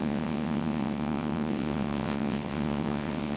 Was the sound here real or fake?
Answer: fake